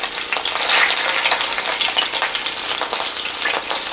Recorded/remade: recorded